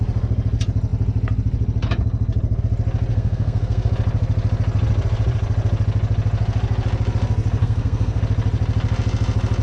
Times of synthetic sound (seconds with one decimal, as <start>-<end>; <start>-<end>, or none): 3.1-3.9; 7.6-8.2